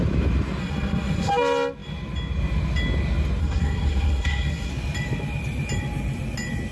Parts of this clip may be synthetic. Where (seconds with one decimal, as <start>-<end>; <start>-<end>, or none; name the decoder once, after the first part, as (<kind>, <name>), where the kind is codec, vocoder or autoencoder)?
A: 0.6-1.3 (codec, SNAC); 3.4-4.7